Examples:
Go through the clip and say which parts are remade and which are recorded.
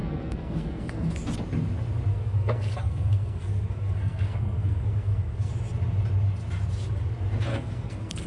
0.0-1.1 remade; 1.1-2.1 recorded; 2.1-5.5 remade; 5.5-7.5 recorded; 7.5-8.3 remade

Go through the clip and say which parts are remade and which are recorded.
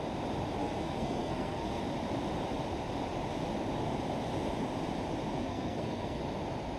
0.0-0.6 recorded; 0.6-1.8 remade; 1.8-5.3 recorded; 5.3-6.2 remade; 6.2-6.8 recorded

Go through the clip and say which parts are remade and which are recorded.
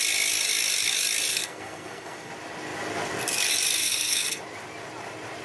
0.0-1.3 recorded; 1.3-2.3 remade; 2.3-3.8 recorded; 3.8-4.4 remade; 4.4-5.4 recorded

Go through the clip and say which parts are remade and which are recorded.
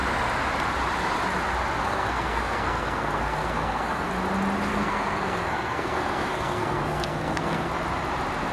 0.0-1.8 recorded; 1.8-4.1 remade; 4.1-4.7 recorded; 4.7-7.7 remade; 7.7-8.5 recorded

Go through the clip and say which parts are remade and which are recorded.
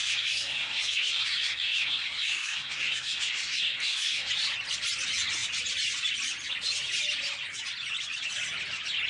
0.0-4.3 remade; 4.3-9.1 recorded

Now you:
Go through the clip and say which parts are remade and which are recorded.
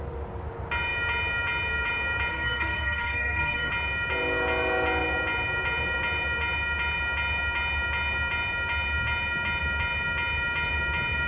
0.0-2.3 recorded; 2.3-3.7 remade; 3.7-11.3 recorded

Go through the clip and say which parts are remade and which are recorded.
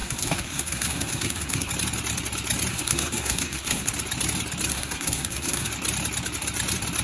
0.0-1.7 remade; 1.7-2.7 recorded; 2.7-3.9 remade; 3.9-4.7 recorded; 4.7-5.7 remade; 5.7-7.0 recorded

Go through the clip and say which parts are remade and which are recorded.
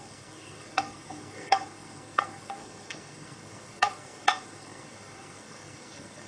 0.0-6.3 remade